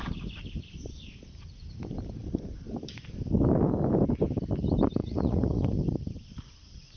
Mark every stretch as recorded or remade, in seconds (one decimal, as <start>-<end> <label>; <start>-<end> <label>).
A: 0.0-5.0 recorded; 5.0-5.7 remade; 5.7-7.0 recorded